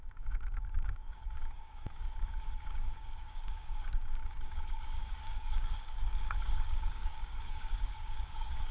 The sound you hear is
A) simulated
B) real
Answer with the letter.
A